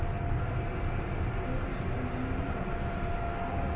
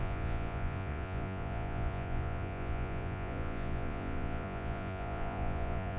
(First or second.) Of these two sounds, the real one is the first